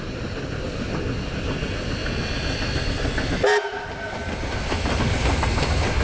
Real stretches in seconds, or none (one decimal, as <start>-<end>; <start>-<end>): 0.0-6.0